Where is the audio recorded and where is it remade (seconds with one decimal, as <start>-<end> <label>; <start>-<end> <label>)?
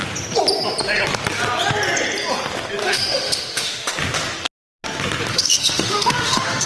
0.0-2.8 recorded; 2.8-3.9 remade; 3.9-5.3 recorded; 5.3-6.7 remade